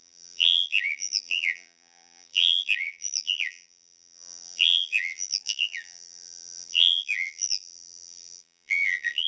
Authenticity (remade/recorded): remade